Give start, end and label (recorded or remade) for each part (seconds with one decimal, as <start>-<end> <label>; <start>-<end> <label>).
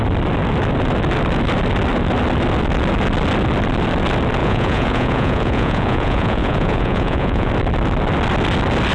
0.0-4.4 recorded; 4.4-7.5 remade; 7.5-8.9 recorded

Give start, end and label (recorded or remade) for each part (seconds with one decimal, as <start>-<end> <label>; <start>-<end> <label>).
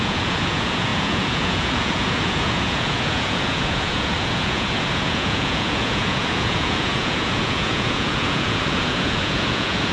0.0-9.9 remade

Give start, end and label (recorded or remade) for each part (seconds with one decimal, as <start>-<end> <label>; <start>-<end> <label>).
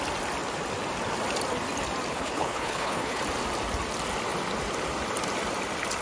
0.0-2.1 recorded; 2.1-3.2 remade; 3.2-6.0 recorded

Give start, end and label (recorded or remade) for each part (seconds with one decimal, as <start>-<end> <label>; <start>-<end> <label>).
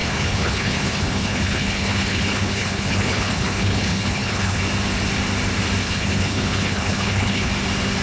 0.0-4.6 remade; 4.6-5.8 recorded; 5.8-7.5 remade; 7.5-8.0 recorded